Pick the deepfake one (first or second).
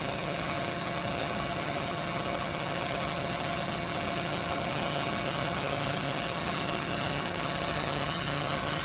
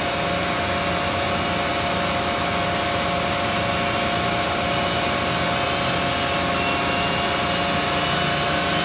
first